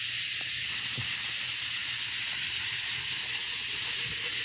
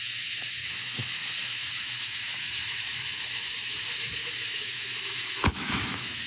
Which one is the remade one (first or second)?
second